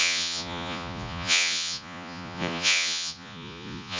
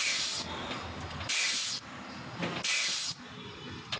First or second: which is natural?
second